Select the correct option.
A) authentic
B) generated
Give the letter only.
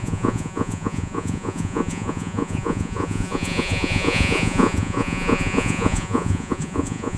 B